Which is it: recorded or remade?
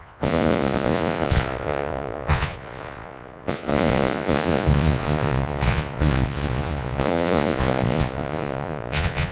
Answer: remade